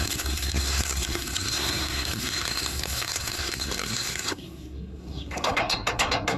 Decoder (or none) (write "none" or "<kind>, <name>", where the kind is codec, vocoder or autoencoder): codec, SNAC